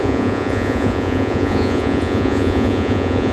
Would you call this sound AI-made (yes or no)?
yes